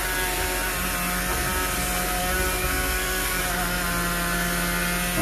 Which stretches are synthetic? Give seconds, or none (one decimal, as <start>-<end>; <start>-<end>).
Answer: 2.6-3.4